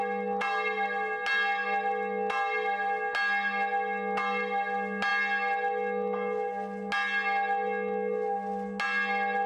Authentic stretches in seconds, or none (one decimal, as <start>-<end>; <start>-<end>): 0.0-9.5